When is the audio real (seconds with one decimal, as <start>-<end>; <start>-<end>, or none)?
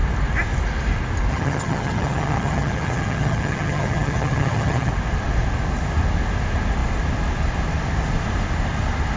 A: 0.0-1.3; 4.9-9.2